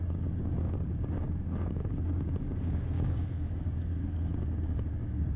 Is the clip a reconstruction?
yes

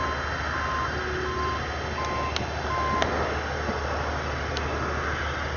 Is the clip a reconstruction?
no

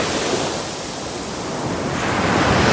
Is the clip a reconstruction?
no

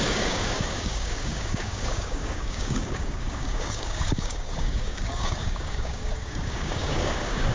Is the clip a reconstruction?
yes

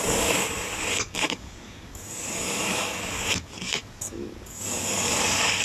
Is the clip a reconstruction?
yes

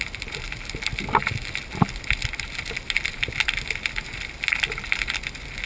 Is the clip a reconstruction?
no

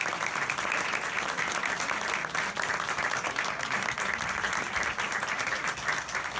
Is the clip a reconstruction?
no